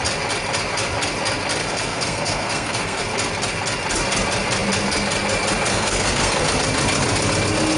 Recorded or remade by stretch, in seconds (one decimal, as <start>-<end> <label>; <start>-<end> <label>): 0.0-1.6 recorded; 1.6-3.0 remade; 3.0-5.7 recorded; 5.7-6.4 remade; 6.4-7.8 recorded